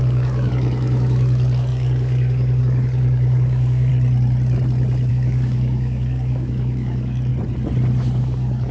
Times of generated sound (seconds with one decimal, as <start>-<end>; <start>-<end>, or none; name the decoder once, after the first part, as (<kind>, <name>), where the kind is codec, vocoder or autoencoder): 0.0-3.9 (codec, DAC); 5.1-7.3; 8.2-8.7